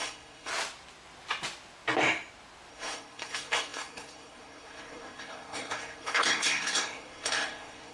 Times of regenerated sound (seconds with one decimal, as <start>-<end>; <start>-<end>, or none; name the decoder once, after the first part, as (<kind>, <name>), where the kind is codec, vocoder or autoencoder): 0.0-0.5 (codec, SNAC); 2.7-7.9